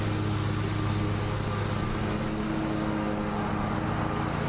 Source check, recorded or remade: recorded